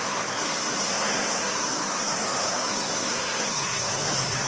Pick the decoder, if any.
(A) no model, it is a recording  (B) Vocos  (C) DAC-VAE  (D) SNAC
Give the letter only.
D